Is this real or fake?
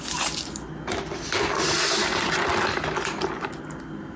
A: real